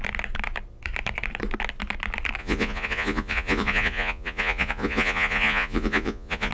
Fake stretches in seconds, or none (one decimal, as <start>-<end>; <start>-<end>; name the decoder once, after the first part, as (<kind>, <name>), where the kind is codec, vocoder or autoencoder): 2.4-6.5 (vocoder, Vocos)